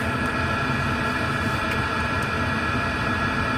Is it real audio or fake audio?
real